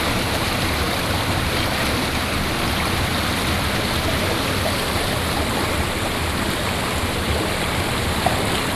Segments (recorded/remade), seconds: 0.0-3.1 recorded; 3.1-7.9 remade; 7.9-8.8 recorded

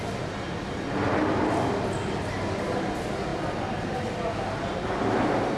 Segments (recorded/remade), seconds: 0.0-5.6 recorded

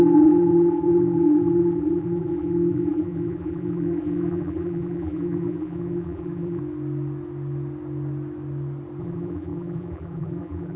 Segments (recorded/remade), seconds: 0.0-6.6 remade; 6.6-9.0 recorded; 9.0-10.8 remade

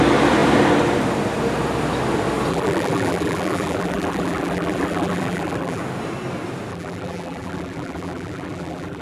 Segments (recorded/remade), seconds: 0.0-2.5 recorded; 2.5-5.8 remade; 5.8-6.7 recorded; 6.7-9.0 remade

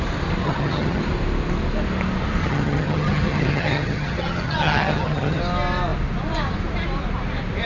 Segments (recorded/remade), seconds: 0.0-0.4 recorded; 0.4-1.0 remade; 1.0-2.4 recorded; 2.4-5.4 remade; 5.4-7.7 recorded